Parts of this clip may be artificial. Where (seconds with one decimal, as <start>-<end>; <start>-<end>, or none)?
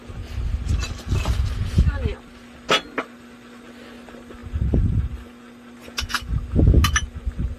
none